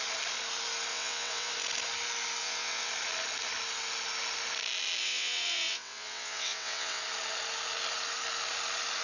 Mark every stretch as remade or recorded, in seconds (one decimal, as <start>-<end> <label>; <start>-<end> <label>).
0.0-0.9 recorded; 0.9-1.5 remade; 1.5-2.4 recorded; 2.4-2.9 remade; 2.9-5.0 recorded; 5.0-7.0 remade; 7.0-9.0 recorded